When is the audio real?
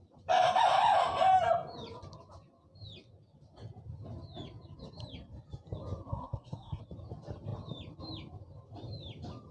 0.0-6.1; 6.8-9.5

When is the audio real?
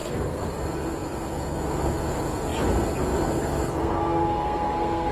0.5-3.8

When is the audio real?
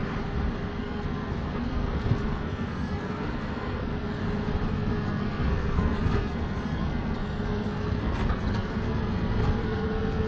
0.0-0.8; 4.2-4.7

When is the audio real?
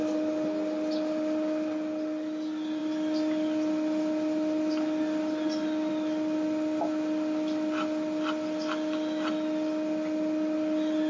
0.0-11.1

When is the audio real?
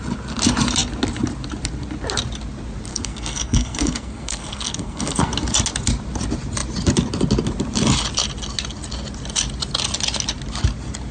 0.0-2.9; 5.3-11.1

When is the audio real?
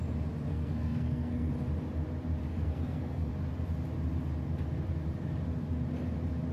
0.0-0.5; 1.5-2.5; 3.3-6.5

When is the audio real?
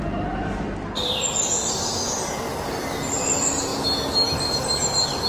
0.0-5.3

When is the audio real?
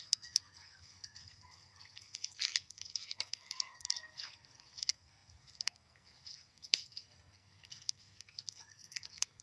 none